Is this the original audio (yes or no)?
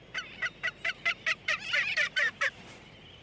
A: no